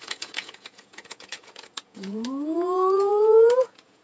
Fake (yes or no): yes